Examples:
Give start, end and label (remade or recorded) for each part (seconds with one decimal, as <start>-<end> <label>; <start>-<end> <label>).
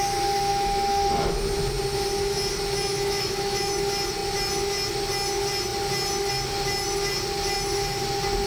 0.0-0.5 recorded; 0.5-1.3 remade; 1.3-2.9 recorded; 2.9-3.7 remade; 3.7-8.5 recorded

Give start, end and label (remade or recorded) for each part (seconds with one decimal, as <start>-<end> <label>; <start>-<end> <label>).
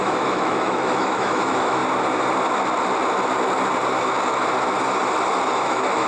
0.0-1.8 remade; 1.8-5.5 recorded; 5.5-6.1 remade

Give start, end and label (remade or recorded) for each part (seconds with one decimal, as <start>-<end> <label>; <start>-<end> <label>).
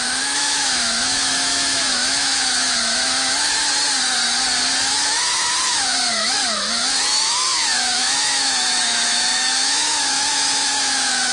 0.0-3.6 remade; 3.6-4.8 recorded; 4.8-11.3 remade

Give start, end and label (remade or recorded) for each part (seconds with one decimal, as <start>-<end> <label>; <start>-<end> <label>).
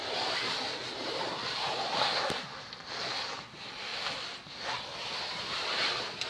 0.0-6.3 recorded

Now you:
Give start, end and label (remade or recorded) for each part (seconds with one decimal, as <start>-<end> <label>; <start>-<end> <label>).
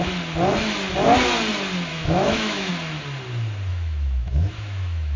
0.0-1.9 recorded; 1.9-2.7 remade; 2.7-3.7 recorded; 3.7-5.2 remade